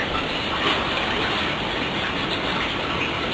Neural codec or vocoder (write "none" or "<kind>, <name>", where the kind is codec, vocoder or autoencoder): none